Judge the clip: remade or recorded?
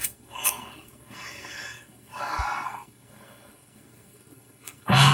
remade